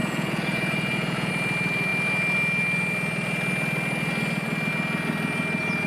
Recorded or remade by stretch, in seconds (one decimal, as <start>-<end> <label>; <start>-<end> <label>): 0.0-1.3 remade; 1.3-5.9 recorded